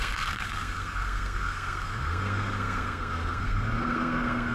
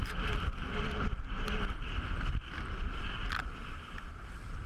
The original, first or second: second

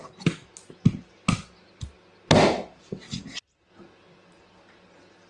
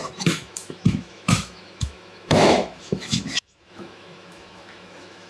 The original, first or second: first